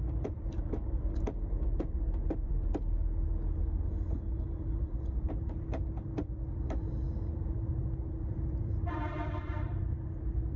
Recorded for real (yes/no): no